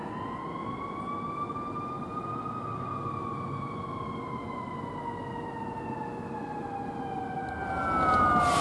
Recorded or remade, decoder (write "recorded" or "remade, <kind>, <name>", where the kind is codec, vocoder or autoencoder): recorded